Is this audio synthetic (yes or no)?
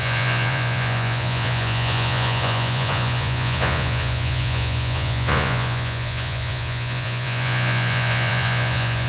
yes